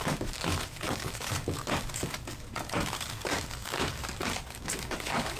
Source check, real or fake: fake